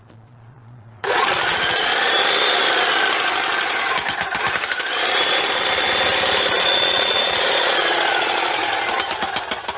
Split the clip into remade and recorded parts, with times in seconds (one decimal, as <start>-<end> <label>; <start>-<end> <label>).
0.0-1.9 remade; 1.9-6.6 recorded; 6.6-8.6 remade; 8.6-9.8 recorded